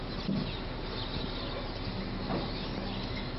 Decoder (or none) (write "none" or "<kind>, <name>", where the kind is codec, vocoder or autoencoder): none